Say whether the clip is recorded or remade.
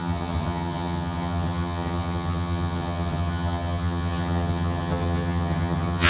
remade